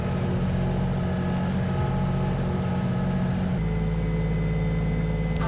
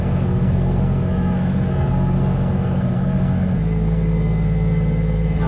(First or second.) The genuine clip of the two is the first